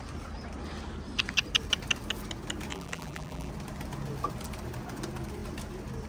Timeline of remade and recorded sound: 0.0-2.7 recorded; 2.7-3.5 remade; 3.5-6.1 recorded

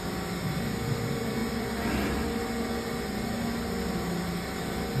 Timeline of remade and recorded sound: 0.0-5.0 recorded

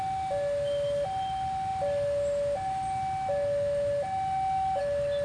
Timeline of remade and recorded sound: 0.0-5.2 recorded

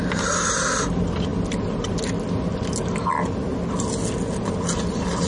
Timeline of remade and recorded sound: 0.0-5.3 recorded

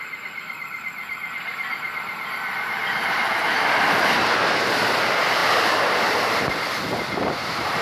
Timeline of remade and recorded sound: 0.0-1.0 remade; 1.0-3.5 recorded; 3.5-5.4 remade; 5.4-6.0 recorded; 6.0-7.8 remade

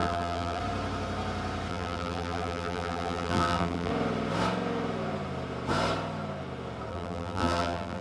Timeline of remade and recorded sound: 0.0-0.6 remade; 0.6-1.7 recorded; 1.7-3.9 remade; 3.9-6.9 recorded; 6.9-8.0 remade

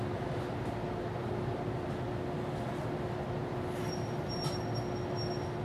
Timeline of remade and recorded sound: 0.0-5.6 recorded